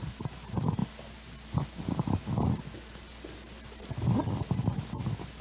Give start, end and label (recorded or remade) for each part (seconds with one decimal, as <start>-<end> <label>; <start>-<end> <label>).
0.0-5.4 recorded